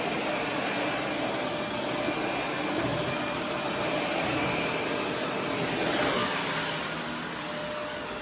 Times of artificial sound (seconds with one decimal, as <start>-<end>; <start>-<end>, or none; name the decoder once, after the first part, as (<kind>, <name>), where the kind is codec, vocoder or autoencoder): 2.9-4.8 (vocoder, BigVGAN v2)